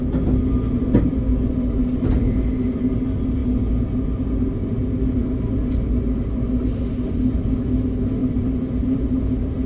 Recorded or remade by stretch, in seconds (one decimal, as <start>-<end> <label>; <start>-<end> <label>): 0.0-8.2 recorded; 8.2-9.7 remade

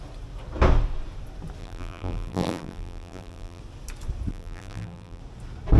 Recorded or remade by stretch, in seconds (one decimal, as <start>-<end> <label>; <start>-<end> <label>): 0.0-1.6 recorded; 1.6-3.6 remade; 3.6-4.3 recorded; 4.3-5.2 remade; 5.2-5.8 recorded

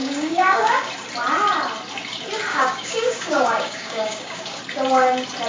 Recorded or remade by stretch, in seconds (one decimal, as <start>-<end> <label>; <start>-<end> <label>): 0.0-0.9 remade; 0.9-2.5 recorded; 2.5-4.6 remade; 4.6-5.5 recorded

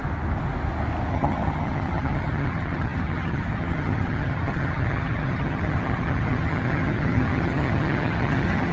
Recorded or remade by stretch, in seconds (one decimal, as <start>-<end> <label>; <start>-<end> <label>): 0.0-1.1 recorded; 1.1-8.7 remade

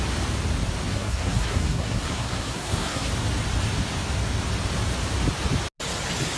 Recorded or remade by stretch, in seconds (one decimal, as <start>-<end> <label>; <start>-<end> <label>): 0.0-0.9 recorded; 0.9-3.1 remade; 3.1-6.4 recorded

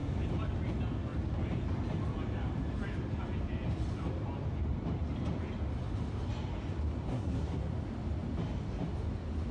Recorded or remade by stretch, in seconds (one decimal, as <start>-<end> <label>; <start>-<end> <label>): 0.0-7.1 recorded; 7.1-7.7 remade; 7.7-9.5 recorded

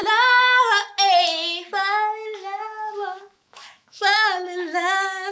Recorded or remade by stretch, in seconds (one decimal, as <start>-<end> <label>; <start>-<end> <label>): 0.0-3.2 recorded; 3.2-5.3 remade

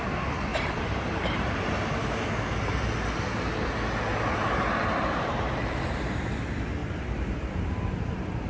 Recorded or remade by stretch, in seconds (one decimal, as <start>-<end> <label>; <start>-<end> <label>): 0.0-0.5 recorded; 0.5-1.7 remade; 1.7-4.1 recorded; 4.1-6.0 remade; 6.0-6.8 recorded; 6.8-7.8 remade; 7.8-8.5 recorded